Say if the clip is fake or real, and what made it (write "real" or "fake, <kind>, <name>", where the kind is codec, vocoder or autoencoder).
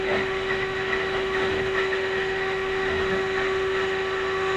fake, autoencoder, DAC-VAE